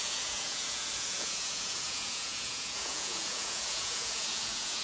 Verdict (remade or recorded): remade